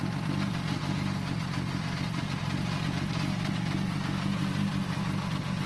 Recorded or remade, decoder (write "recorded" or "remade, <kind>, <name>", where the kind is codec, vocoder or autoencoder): recorded